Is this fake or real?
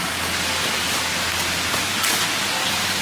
real